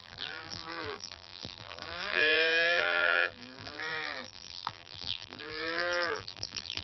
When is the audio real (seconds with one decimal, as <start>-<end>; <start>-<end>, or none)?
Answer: none